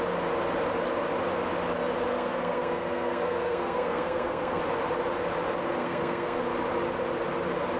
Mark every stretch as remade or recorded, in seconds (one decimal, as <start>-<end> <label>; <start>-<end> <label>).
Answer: 0.0-2.1 recorded; 2.1-4.6 remade; 4.6-5.8 recorded; 5.8-6.4 remade; 6.4-7.8 recorded